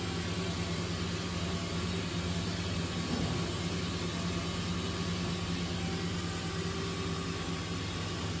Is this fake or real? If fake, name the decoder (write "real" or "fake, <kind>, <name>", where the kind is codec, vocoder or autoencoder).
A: real